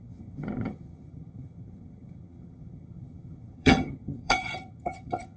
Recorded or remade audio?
remade